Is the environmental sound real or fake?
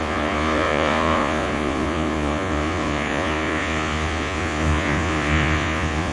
fake